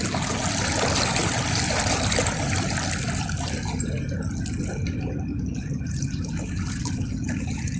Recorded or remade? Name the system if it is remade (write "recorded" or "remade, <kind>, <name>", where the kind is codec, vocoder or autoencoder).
recorded